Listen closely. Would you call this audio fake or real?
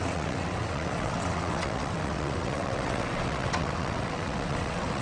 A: fake